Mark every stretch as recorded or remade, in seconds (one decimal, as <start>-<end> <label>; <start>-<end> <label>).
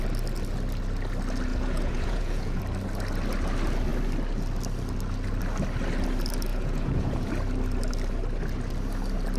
0.0-1.5 recorded; 1.5-2.6 remade; 2.6-6.5 recorded; 6.5-7.3 remade; 7.3-9.4 recorded